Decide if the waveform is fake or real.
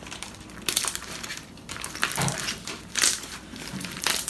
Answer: fake